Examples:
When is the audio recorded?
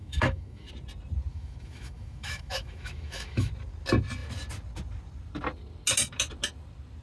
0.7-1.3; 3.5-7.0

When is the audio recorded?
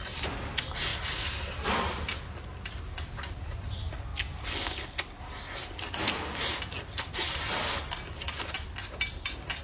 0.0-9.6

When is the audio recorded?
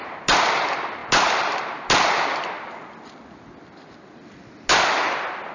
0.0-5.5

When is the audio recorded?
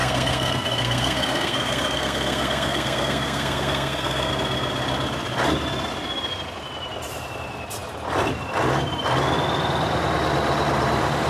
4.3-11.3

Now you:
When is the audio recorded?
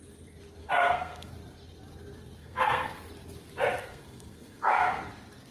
0.0-0.6; 1.3-2.4; 3.0-3.8; 5.0-5.5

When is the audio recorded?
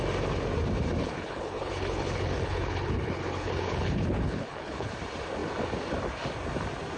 0.0-1.0; 4.9-7.0